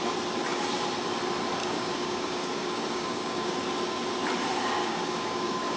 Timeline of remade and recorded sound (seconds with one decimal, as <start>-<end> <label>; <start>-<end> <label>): 0.0-1.6 recorded; 1.6-3.5 remade; 3.5-4.8 recorded; 4.8-5.8 remade